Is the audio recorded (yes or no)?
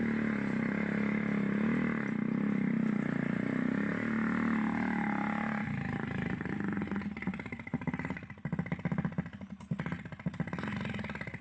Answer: yes